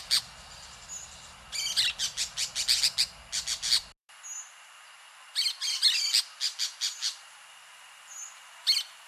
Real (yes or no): yes